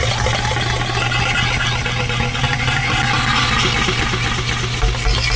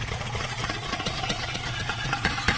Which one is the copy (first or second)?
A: second